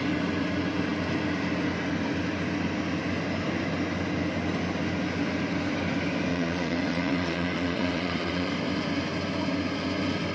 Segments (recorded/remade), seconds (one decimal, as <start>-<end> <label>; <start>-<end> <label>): 0.0-6.3 recorded; 6.3-8.5 remade; 8.5-10.3 recorded